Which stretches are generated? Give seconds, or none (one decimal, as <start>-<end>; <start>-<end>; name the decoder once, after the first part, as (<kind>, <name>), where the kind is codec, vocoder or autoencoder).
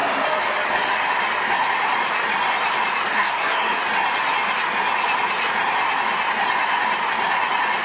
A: 3.1-3.8 (codec, SNAC)